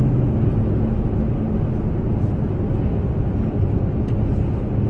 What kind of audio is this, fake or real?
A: real